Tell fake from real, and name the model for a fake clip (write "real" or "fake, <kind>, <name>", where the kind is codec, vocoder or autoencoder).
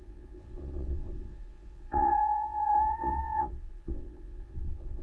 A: fake, vocoder, WaveNeXt